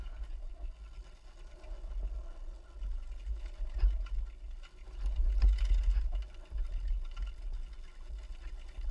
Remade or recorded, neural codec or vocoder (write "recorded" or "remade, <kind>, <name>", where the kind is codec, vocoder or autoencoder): recorded